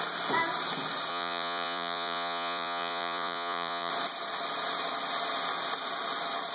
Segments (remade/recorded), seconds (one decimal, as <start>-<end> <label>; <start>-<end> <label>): 0.0-1.1 recorded; 1.1-3.9 remade; 3.9-6.5 recorded